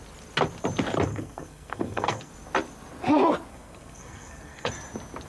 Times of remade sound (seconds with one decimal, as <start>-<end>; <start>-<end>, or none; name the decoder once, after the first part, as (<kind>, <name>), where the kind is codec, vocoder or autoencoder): 1.1-2.3 (codec, SNAC); 3.5-4.7